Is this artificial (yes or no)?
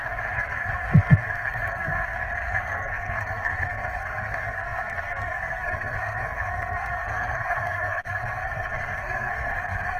yes